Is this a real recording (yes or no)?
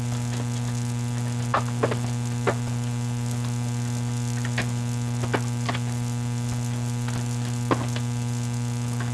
yes